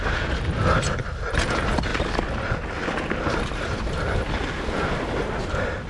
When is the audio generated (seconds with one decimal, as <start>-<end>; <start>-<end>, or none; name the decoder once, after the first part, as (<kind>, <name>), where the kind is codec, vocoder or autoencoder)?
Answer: none